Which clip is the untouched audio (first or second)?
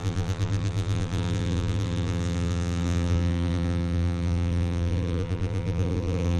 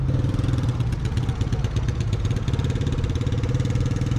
second